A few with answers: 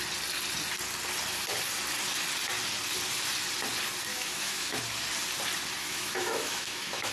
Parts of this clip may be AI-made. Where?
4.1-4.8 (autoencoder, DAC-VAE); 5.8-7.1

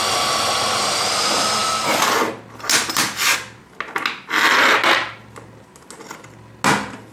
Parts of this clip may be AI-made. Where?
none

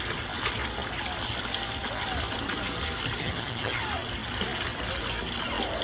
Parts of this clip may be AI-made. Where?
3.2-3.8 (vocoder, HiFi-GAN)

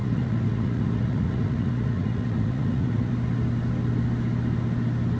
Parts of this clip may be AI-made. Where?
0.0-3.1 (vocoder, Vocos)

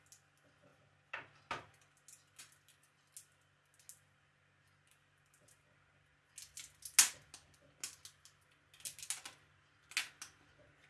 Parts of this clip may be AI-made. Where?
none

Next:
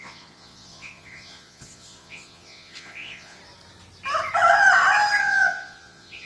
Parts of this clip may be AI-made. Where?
0.0-3.4 (vocoder, Vocos); 5.2-6.3

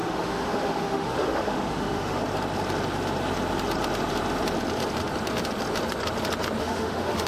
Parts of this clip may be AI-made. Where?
0.0-2.2 (autoencoder, DAC-VAE); 6.6-7.3